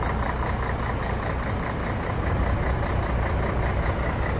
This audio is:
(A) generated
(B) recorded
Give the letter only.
B